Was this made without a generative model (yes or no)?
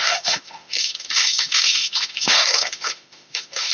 no